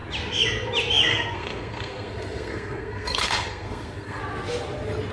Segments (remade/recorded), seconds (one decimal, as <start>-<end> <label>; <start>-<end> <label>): 0.0-1.1 recorded; 1.1-4.2 remade; 4.2-5.1 recorded